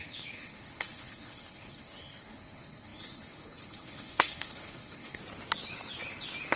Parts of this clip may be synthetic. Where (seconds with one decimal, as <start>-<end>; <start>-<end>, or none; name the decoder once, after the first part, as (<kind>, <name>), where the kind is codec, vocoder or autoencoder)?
0.0-5.2 (codec, HILCodec)

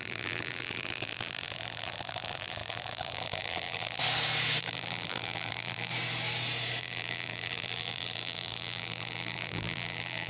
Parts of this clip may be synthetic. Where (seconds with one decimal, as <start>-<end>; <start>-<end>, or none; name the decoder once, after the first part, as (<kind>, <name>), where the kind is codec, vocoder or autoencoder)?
0.0-4.0 (vocoder, BigVGAN v2); 4.6-5.9; 6.8-10.3

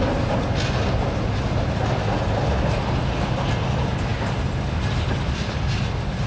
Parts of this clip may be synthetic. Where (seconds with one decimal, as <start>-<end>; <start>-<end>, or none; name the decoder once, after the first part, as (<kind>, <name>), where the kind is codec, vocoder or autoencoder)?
none

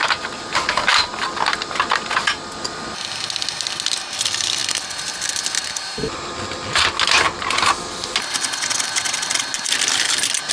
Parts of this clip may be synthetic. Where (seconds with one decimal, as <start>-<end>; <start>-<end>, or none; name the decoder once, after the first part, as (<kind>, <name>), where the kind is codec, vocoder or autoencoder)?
none

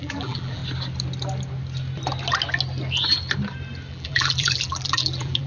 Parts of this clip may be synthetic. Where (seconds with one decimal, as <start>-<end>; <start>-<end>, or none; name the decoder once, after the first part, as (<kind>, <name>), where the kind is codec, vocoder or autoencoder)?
0.0-0.6 (vocoder, BigVGAN v2); 3.9-5.5

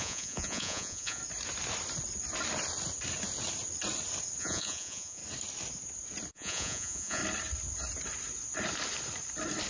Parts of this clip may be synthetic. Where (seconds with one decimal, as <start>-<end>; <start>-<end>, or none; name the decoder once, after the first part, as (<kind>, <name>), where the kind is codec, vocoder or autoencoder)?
0.0-1.2 (vocoder, Vocos); 4.4-5.2; 6.3-7.2